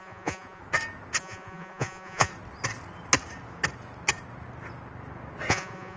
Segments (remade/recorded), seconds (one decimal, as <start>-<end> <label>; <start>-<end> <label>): 0.0-0.6 remade; 0.6-1.2 recorded; 1.2-2.3 remade; 2.3-5.5 recorded; 5.5-6.0 remade